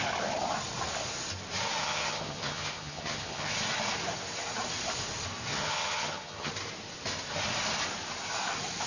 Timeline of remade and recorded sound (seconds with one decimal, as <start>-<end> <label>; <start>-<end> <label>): 0.0-1.8 recorded; 1.8-3.5 remade; 3.5-5.5 recorded; 5.5-6.5 remade; 6.5-8.9 recorded